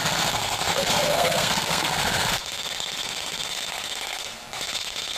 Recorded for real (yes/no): no